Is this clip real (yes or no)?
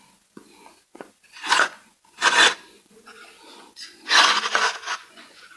no